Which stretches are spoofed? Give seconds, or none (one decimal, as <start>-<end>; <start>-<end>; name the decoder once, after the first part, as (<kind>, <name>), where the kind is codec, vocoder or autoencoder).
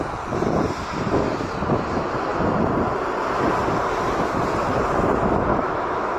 5.5-6.2 (autoencoder, DAC-VAE)